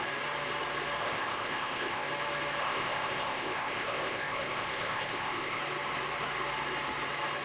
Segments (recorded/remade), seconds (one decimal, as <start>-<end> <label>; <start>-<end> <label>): 0.0-1.0 recorded; 1.0-2.1 remade; 2.1-2.6 recorded; 2.6-5.6 remade; 5.6-7.4 recorded